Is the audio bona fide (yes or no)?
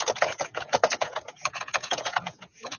no